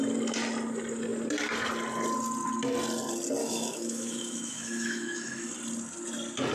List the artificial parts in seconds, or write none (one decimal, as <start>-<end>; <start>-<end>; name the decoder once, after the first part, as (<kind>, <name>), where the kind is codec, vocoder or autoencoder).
3.4-5.5 (autoencoder, DAC-VAE)